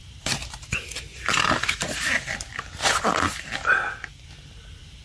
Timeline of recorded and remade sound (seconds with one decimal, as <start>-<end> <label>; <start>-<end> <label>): 0.0-5.0 recorded